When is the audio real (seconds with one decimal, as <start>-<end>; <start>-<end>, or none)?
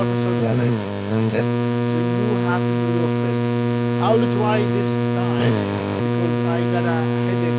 0.0-0.4; 1.4-5.4; 6.0-7.6